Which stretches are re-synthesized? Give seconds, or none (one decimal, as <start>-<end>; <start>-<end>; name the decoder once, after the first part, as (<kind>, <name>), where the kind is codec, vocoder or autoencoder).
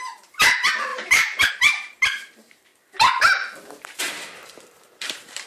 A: 0.0-2.7 (vocoder, BigVGAN v2); 4.0-5.5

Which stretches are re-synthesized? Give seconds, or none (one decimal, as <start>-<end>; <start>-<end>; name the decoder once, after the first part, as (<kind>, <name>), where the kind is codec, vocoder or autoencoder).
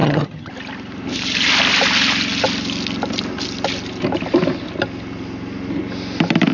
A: 0.0-0.5 (vocoder, HiFi-GAN)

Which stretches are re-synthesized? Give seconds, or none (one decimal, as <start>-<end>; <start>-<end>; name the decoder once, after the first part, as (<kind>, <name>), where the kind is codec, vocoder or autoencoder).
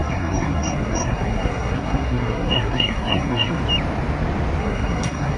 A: 0.0-3.6 (codec, SNAC); 4.6-5.4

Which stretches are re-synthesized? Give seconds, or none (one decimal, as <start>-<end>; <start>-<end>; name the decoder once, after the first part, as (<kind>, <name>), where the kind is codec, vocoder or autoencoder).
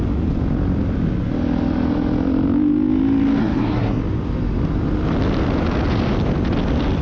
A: 3.4-4.0 (codec, SNAC)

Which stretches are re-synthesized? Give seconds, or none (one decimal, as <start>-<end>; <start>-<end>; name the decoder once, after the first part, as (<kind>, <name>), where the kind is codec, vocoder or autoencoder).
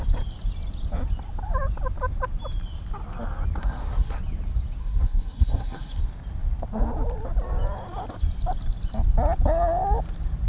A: 3.6-4.2 (codec, SNAC); 4.8-6.0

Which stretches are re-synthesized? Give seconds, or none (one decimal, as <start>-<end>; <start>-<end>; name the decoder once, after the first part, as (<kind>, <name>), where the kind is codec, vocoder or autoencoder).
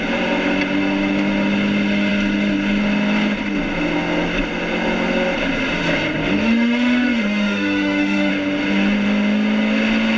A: 6.2-8.3 (autoencoder, DAC-VAE)